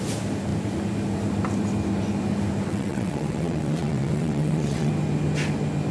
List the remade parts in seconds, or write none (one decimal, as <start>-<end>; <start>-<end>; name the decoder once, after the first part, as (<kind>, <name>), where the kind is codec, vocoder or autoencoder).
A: 2.7-4.9 (vocoder, WaveNeXt)